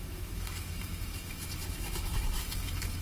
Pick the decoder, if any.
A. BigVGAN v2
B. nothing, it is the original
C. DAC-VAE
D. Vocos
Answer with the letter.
C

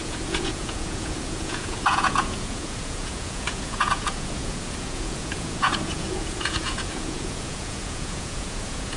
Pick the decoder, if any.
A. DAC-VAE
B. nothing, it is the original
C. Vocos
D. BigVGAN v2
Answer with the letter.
C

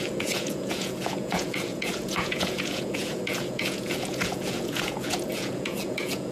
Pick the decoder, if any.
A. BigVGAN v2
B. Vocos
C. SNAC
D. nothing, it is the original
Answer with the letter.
B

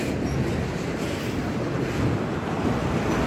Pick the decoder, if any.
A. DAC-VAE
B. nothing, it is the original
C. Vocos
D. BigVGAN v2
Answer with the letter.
B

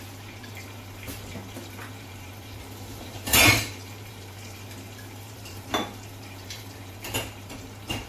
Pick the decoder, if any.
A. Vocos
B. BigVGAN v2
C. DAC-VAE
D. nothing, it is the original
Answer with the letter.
B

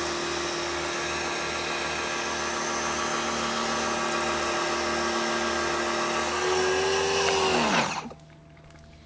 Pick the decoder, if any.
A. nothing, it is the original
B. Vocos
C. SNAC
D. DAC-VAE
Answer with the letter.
A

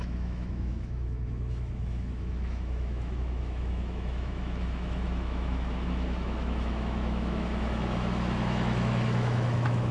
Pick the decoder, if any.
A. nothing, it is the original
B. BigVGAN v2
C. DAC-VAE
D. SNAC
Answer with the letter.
C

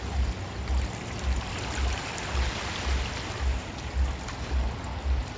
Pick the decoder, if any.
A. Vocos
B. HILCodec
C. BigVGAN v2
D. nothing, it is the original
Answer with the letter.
D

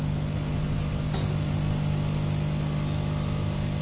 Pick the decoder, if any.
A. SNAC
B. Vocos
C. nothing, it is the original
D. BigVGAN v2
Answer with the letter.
C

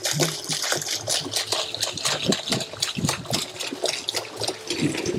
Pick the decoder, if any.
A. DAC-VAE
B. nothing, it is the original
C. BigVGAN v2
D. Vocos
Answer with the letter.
B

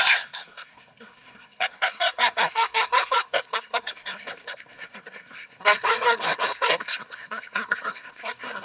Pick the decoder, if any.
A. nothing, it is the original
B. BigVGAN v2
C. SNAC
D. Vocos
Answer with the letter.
C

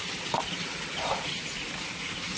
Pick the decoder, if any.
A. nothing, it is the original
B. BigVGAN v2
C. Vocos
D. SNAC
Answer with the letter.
A